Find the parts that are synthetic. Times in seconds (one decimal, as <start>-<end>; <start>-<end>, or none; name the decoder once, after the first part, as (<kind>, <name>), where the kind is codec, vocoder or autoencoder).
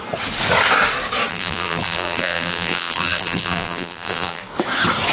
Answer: 1.3-4.4 (vocoder, BigVGAN v2)